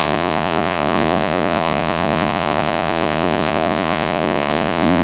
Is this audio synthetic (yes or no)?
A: yes